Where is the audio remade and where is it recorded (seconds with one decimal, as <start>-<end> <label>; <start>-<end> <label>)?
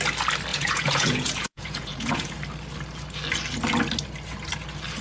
0.0-0.5 recorded; 0.5-2.3 remade; 2.3-5.0 recorded